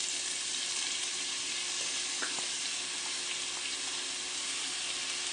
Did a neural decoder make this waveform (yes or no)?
no